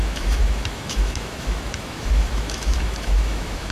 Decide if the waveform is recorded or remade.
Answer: remade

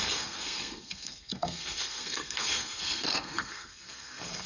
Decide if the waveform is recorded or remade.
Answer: remade